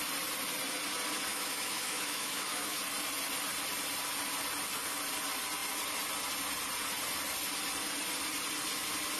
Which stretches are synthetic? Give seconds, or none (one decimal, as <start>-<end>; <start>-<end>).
1.3-2.8